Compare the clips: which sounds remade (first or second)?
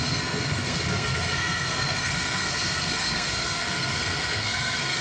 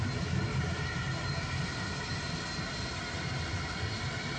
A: first